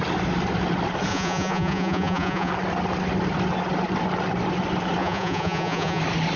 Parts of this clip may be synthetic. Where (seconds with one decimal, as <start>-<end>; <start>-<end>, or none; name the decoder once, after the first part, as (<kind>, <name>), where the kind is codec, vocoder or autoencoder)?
1.1-2.5 (vocoder, Vocos); 5.0-6.0